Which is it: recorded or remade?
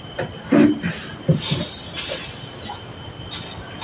recorded